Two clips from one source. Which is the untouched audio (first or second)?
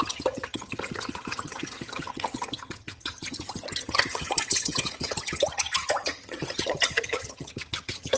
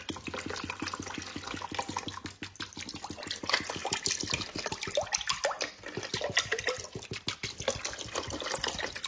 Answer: second